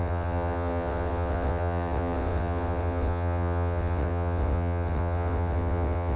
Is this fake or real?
fake